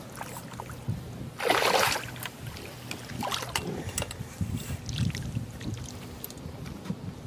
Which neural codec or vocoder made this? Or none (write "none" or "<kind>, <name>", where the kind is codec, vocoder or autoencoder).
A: none